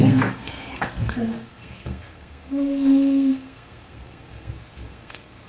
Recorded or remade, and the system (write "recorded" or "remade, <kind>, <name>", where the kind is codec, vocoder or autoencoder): remade, codec, SNAC